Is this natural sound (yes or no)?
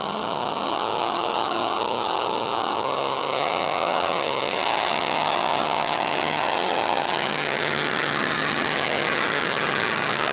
no